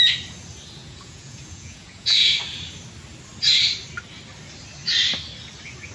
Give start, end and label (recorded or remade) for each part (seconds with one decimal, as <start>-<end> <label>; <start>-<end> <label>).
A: 0.0-0.8 recorded; 0.8-2.3 remade; 2.3-5.9 recorded